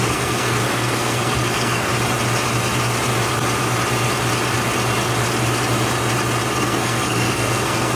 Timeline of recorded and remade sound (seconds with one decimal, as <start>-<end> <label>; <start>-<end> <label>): 0.0-1.9 remade; 1.9-6.6 recorded; 6.6-8.0 remade